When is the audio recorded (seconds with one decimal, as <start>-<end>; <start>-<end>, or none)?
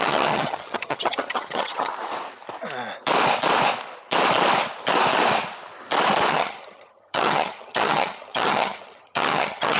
1.9-6.3